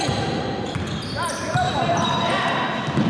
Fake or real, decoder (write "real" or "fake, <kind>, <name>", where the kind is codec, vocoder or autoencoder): real